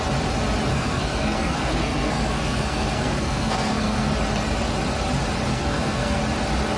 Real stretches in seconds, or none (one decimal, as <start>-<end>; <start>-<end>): 0.0-0.7; 4.1-5.5; 6.2-6.8